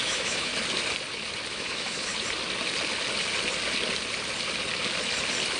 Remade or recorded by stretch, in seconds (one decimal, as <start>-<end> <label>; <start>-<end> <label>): 0.0-0.5 remade; 0.5-1.5 recorded; 1.5-2.1 remade; 2.1-5.6 recorded

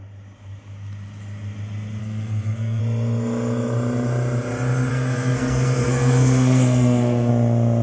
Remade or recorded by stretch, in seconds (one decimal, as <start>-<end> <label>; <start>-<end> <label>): 0.0-2.0 recorded; 2.0-2.8 remade; 2.8-4.9 recorded; 4.9-7.3 remade; 7.3-7.8 recorded

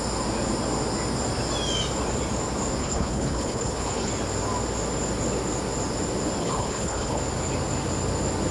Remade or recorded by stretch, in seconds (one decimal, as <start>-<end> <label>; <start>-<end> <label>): 0.0-2.8 recorded; 2.8-4.1 remade; 4.1-6.4 recorded; 6.4-7.2 remade; 7.2-8.5 recorded

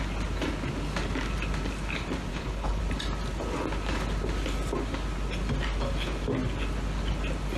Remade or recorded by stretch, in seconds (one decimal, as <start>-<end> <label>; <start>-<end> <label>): 0.0-2.3 recorded; 2.3-2.8 remade; 2.8-7.6 recorded

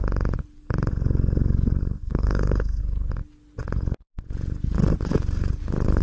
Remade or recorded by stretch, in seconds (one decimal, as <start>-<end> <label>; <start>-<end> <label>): 0.0-1.8 recorded; 1.8-2.8 remade; 2.8-6.0 recorded

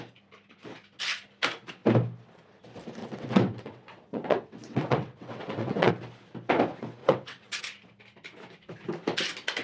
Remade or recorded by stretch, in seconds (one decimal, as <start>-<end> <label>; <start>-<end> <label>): 0.0-3.0 recorded; 3.0-5.9 remade; 5.9-7.0 recorded; 7.0-7.6 remade; 7.6-9.6 recorded